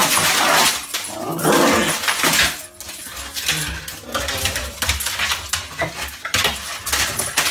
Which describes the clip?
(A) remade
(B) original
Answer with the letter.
B